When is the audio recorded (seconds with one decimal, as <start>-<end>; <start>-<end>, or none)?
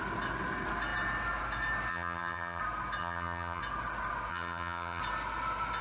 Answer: 0.0-1.9; 2.6-3.0; 3.6-4.3; 5.0-5.8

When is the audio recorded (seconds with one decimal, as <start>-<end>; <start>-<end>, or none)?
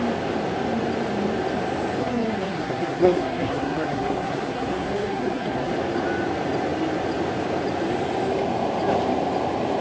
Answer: 0.0-2.0; 5.7-9.8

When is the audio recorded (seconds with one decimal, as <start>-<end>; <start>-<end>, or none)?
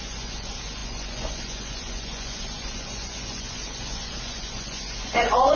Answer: none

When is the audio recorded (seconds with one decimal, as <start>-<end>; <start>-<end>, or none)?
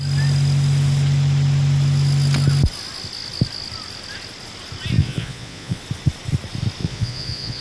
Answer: 0.0-5.0; 5.8-6.8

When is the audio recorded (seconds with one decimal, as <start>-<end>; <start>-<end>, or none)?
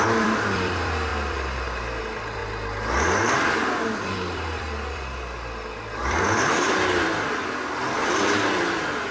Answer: 2.4-3.8